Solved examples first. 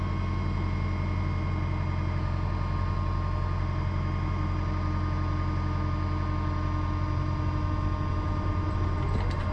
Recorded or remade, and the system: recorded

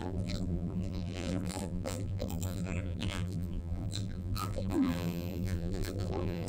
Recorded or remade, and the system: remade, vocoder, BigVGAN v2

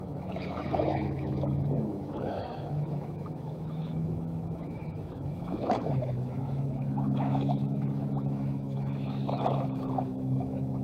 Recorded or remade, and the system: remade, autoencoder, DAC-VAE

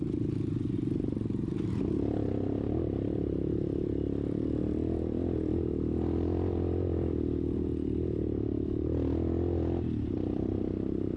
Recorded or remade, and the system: recorded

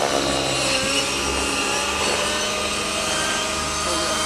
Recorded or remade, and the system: recorded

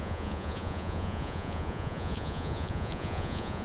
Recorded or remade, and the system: remade, vocoder, Vocos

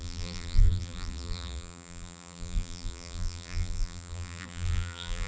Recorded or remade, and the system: remade, vocoder, BigVGAN v2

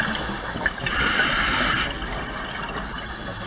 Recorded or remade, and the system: recorded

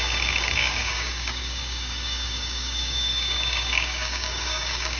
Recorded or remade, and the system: remade, codec, DAC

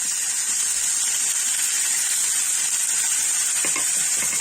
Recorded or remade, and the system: recorded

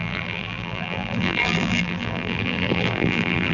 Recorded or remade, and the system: remade, vocoder, BigVGAN v2